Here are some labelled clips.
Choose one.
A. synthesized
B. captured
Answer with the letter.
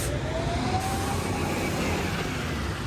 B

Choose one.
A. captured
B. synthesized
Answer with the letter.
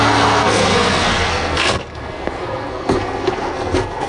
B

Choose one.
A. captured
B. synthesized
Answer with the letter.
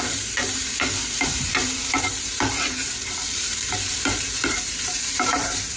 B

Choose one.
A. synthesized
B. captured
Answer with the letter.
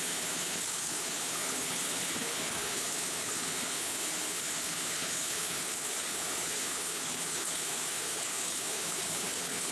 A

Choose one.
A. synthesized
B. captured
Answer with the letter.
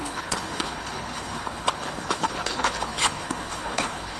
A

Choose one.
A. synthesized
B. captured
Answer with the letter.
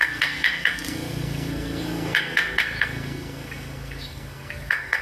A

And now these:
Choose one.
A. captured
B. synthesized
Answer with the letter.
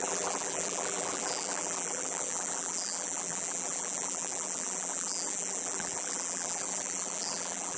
B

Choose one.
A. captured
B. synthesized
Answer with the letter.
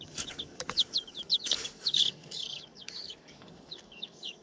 B